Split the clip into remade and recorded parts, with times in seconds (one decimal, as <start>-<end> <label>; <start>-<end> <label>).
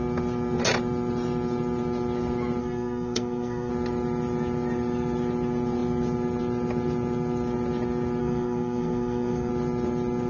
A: 0.0-2.6 recorded; 2.6-3.7 remade; 3.7-8.2 recorded; 8.2-9.5 remade; 9.5-10.3 recorded